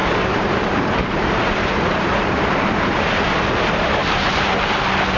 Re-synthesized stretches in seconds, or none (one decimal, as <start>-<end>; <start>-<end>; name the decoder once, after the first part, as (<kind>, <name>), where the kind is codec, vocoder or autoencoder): 0.0-3.1 (vocoder, BigVGAN v2); 4.0-4.7